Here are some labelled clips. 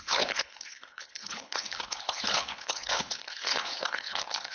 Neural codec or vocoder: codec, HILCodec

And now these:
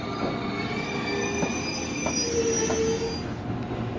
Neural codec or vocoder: none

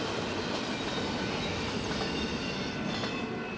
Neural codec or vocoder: none